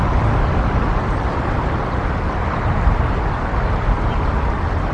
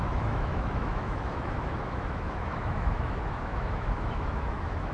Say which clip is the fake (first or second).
second